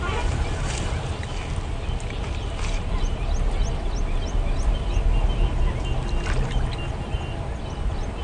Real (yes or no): yes